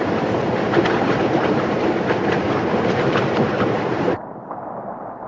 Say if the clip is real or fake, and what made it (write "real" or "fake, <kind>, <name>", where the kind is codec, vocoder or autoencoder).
fake, vocoder, BigVGAN v2